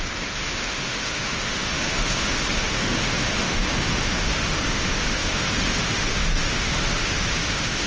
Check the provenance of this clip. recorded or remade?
remade